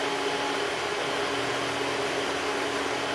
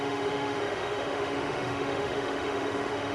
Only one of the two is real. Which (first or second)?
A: first